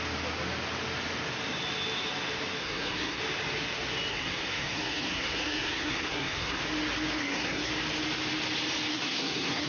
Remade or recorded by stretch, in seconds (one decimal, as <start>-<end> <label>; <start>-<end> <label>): 0.0-2.6 recorded; 2.6-3.2 remade; 3.2-4.1 recorded; 4.1-6.6 remade; 6.6-7.2 recorded; 7.2-7.7 remade; 7.7-8.9 recorded; 8.9-9.7 remade

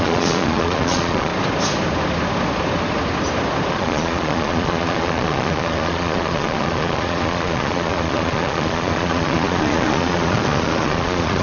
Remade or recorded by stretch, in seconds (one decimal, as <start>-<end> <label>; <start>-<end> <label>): 0.0-1.3 remade; 1.3-3.7 recorded; 3.7-11.4 remade

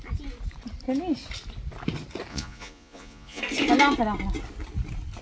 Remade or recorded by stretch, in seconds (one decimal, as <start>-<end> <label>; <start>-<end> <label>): 0.0-2.3 recorded; 2.3-3.4 remade; 3.4-5.2 recorded